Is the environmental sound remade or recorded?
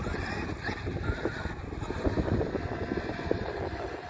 recorded